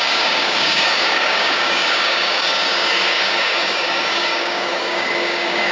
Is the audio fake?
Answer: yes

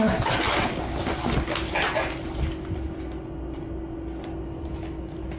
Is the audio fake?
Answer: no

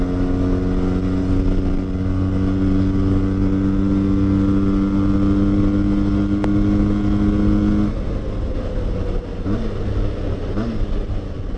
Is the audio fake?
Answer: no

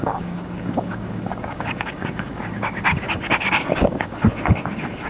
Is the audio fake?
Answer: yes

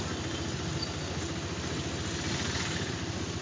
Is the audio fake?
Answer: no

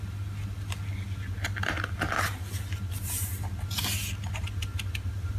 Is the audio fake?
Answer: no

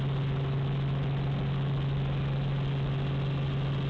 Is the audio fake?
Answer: no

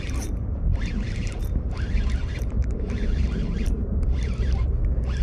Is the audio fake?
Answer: yes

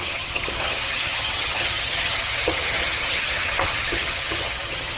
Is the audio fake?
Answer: yes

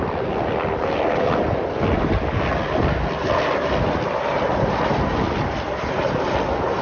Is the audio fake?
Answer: no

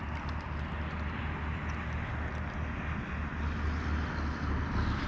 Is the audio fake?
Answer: no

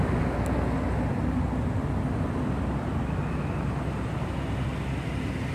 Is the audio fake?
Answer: no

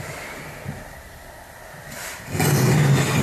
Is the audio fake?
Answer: no